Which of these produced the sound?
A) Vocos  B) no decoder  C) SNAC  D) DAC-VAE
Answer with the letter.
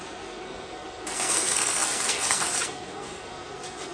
C